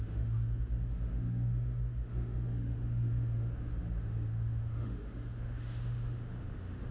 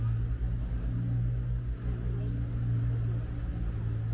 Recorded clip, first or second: second